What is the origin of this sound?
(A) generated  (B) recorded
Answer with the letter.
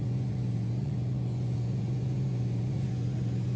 A